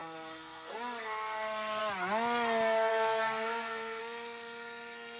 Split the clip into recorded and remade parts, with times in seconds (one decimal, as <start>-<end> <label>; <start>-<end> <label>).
0.0-1.8 remade; 1.8-2.9 recorded; 2.9-4.0 remade; 4.0-5.2 recorded